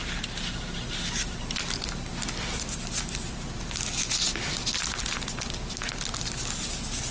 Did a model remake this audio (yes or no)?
no